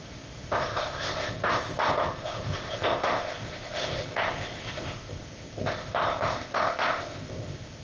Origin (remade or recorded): remade